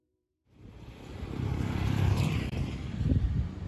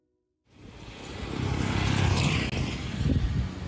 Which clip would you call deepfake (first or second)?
first